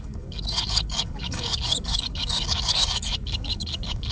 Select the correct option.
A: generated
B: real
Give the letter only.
A